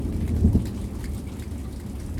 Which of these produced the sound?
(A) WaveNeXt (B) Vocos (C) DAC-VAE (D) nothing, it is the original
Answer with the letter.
D